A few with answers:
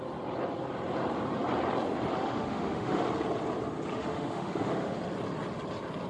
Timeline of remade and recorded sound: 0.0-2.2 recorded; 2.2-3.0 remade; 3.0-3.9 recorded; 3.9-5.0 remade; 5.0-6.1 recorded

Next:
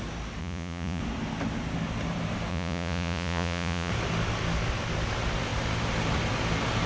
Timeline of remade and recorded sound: 0.0-0.4 recorded; 0.4-1.0 remade; 1.0-2.5 recorded; 2.5-3.9 remade; 3.9-6.9 recorded

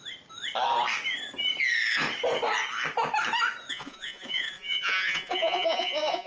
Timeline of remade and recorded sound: 0.0-3.7 recorded; 3.7-6.3 remade

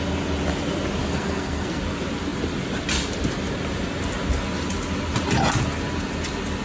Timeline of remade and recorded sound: 0.0-1.0 recorded; 1.0-1.8 remade; 1.8-6.6 recorded

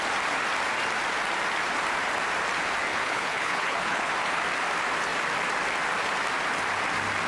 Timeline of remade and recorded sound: 0.0-2.9 recorded; 2.9-4.1 remade; 4.1-7.3 recorded

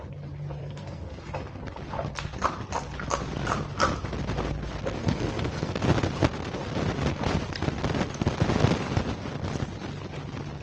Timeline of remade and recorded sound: 0.0-0.6 recorded; 0.6-1.2 remade; 1.2-5.0 recorded; 5.0-5.7 remade; 5.7-10.6 recorded